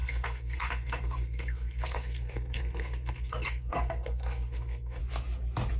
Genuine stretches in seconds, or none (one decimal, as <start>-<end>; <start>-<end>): 5.0-5.8